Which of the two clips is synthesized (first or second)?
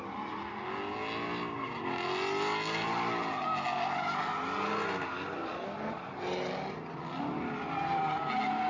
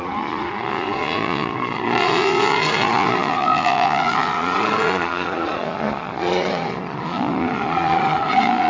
second